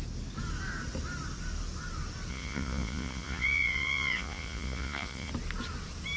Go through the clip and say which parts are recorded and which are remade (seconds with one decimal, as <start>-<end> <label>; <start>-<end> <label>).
0.0-2.3 recorded; 2.3-5.3 remade; 5.3-6.2 recorded